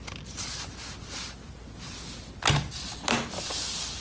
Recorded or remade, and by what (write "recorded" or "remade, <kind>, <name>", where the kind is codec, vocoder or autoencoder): recorded